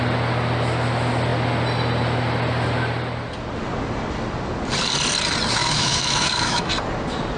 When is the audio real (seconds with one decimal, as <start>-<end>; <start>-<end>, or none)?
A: 0.0-5.6; 6.7-7.4